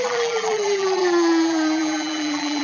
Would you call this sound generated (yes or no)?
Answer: yes